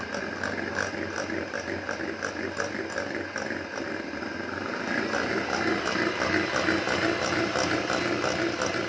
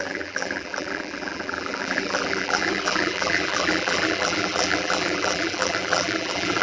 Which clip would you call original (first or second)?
first